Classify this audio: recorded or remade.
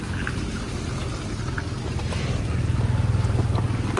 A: recorded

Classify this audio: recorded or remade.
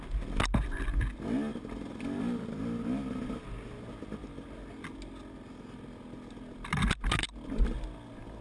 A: recorded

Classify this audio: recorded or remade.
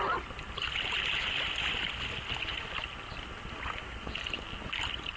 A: recorded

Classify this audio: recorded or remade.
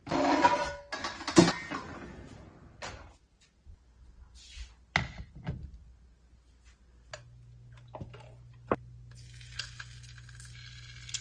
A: recorded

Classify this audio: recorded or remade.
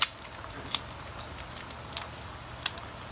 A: recorded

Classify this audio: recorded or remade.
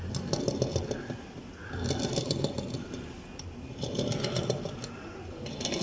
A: recorded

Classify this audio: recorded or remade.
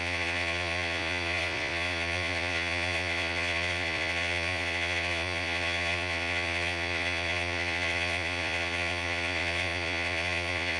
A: remade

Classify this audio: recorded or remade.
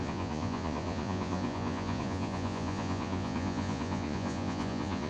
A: remade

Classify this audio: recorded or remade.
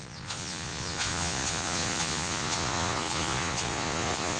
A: remade